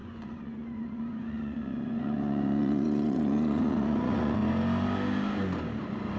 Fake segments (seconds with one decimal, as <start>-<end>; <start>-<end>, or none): 0.0-4.4